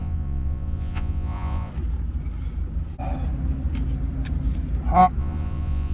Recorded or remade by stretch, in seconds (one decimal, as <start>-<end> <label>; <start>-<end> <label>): 0.0-1.7 remade; 1.7-5.2 recorded; 5.2-5.9 remade